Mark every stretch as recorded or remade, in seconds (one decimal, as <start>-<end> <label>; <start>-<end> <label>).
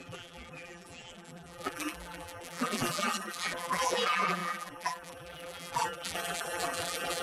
0.0-7.2 remade